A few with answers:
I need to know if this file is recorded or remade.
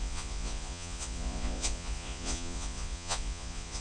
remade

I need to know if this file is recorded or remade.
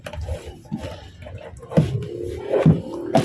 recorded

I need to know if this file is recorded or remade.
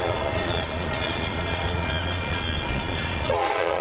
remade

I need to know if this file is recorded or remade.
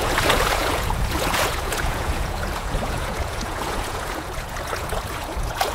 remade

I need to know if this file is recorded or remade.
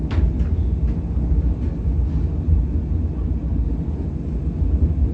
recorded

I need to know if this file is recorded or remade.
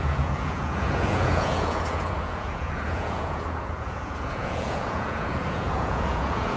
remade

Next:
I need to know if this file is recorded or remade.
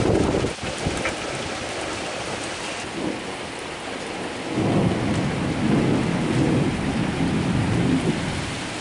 recorded